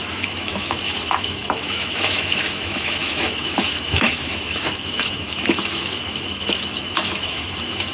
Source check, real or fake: fake